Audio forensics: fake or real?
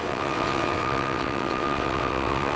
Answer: fake